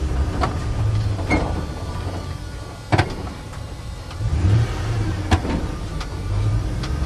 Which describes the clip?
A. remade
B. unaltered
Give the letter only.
A